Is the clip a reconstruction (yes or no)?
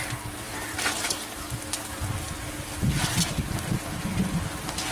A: no